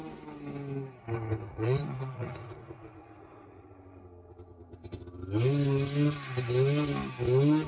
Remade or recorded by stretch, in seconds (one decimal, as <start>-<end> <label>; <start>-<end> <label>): 0.0-1.5 recorded; 1.5-3.7 remade; 3.7-7.7 recorded